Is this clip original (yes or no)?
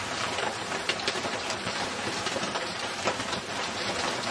no